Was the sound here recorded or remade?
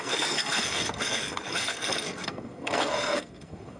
remade